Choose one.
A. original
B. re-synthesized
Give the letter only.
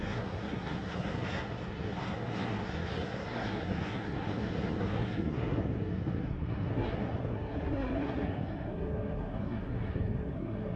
B